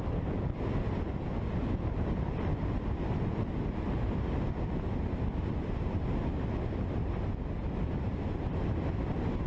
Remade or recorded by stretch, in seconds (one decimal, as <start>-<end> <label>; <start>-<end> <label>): 0.0-9.5 recorded